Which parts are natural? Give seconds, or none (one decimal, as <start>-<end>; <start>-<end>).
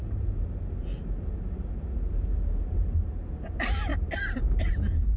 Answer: 0.0-5.2